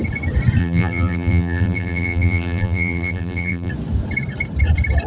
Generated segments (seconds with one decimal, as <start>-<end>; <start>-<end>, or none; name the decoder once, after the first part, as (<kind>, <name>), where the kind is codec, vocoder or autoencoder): 0.6-3.7 (vocoder, BigVGAN v2)